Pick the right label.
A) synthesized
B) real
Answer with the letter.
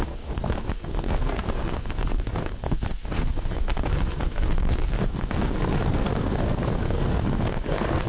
A